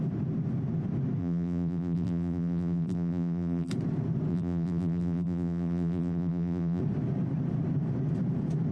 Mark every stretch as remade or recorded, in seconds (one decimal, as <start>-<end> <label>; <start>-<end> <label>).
0.0-1.2 recorded; 1.2-3.7 remade; 3.7-4.3 recorded; 4.3-6.8 remade; 6.8-8.7 recorded